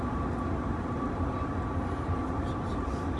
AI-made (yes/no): no